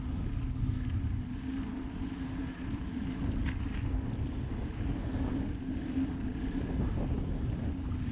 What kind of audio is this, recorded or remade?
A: recorded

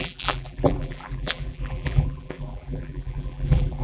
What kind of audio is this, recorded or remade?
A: remade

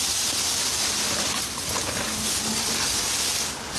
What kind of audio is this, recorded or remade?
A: recorded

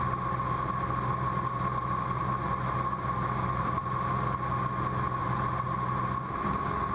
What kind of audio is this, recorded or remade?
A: remade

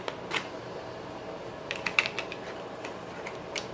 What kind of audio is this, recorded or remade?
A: remade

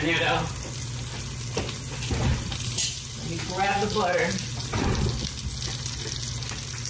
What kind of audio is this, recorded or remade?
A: recorded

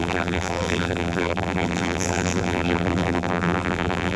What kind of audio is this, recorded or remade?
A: remade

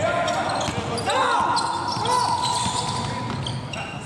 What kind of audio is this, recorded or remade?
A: recorded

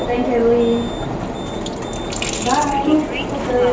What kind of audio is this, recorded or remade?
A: recorded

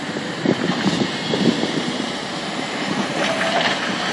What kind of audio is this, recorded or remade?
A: remade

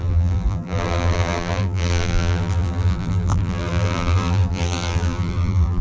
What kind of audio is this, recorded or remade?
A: remade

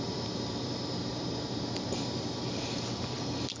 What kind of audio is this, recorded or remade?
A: remade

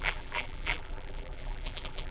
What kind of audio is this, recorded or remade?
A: remade